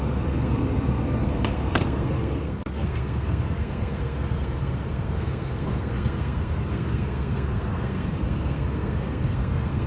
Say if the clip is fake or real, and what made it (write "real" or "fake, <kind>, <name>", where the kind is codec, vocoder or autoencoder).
fake, codec, SNAC